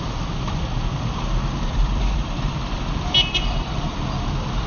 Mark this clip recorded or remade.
remade